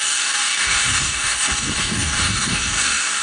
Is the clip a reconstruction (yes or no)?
yes